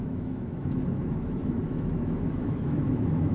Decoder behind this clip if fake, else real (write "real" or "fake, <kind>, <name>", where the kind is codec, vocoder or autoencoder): fake, autoencoder, DAC-VAE